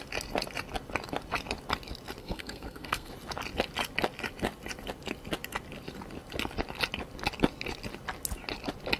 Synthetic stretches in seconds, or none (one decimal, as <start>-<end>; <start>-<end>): 2.2-3.1